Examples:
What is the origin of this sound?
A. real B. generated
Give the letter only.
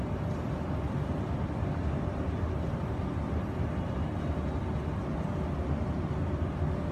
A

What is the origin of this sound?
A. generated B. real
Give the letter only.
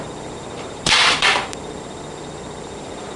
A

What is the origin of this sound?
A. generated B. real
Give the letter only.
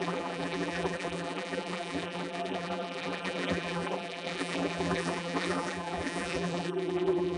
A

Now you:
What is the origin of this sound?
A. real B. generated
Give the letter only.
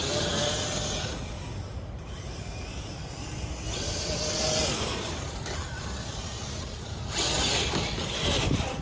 A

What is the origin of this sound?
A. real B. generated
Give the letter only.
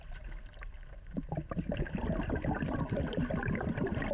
B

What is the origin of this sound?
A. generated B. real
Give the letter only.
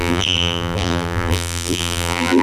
A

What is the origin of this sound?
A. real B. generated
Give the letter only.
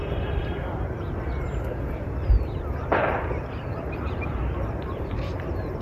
B